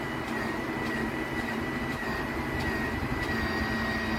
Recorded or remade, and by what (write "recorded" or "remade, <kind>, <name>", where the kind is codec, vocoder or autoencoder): recorded